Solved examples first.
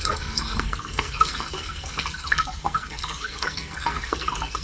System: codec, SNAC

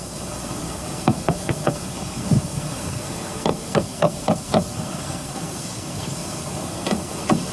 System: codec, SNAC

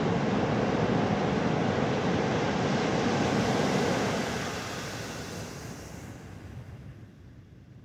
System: none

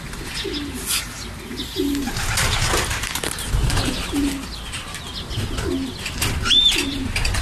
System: none